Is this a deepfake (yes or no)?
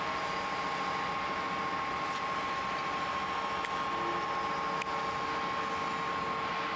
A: no